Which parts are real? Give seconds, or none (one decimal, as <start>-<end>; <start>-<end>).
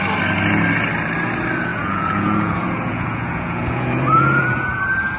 0.0-1.7; 4.8-5.2